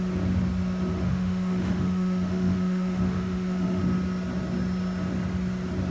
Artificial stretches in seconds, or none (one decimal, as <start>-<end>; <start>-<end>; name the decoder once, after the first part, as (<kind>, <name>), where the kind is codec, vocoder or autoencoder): 0.9-3.8 (autoencoder, DAC-VAE)